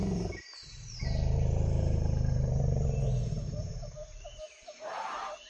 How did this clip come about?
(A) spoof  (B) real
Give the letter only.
A